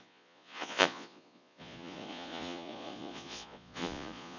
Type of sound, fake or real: fake